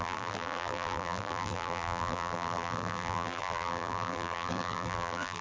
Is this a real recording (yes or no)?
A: no